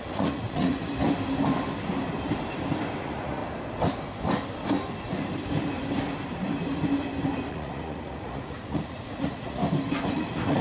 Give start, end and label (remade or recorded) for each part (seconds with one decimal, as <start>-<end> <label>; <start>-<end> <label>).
0.0-0.7 remade; 0.7-3.0 recorded; 3.0-3.4 remade; 3.4-7.5 recorded; 7.5-9.6 remade; 9.6-10.1 recorded; 10.1-10.6 remade